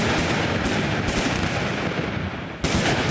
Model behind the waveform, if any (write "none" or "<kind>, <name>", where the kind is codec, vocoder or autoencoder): none